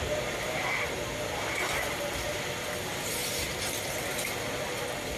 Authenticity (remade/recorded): remade